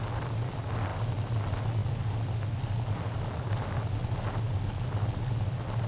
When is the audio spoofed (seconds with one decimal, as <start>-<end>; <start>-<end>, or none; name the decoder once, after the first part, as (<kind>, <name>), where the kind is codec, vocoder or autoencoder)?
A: none